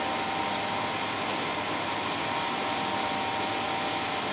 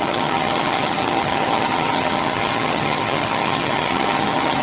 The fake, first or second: second